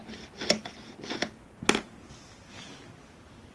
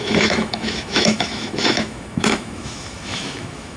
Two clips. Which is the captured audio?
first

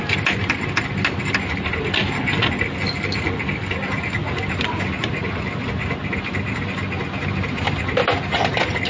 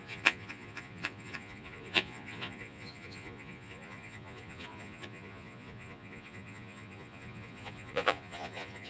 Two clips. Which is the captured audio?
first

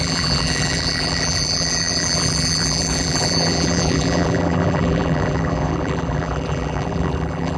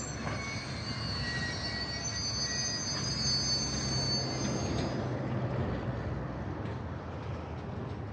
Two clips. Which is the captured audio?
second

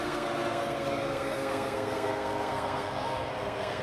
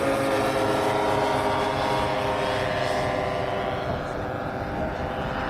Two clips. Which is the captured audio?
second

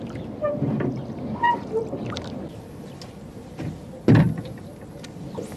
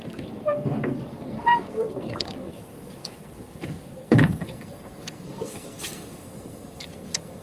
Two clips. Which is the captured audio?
first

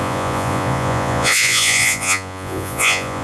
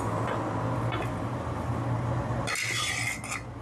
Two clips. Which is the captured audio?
second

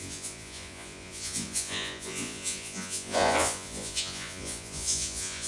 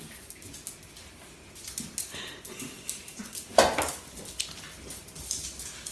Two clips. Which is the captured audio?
second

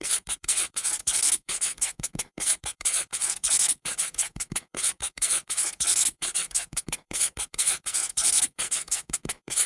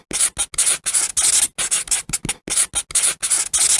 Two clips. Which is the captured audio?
second